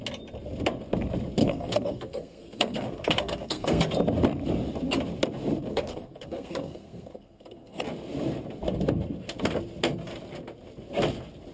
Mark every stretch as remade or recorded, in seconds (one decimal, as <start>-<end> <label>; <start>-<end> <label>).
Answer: 0.0-1.4 recorded; 1.4-3.8 remade; 3.8-5.7 recorded; 5.7-7.8 remade; 7.8-11.5 recorded